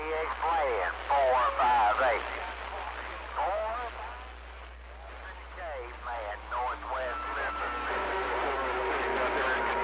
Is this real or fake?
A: real